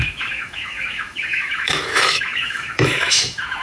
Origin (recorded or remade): remade